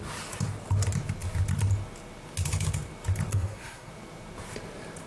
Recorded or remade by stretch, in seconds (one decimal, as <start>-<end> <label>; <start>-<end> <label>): 0.0-3.3 recorded; 3.3-3.9 remade; 3.9-5.1 recorded